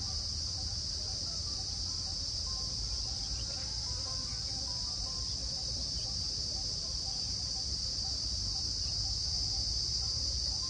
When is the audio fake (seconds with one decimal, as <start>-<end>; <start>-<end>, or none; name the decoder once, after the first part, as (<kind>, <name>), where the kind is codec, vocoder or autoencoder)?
0.0-4.3 (vocoder, BigVGAN v2); 4.8-10.7